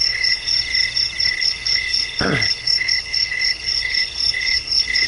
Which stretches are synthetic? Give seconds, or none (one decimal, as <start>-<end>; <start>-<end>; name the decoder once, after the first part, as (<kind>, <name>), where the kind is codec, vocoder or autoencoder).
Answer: 0.0-0.5 (codec, HILCodec); 1.3-5.1